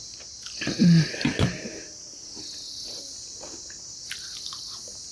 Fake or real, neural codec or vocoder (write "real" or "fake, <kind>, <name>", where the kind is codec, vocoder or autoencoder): real